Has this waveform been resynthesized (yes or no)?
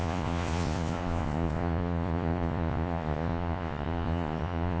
yes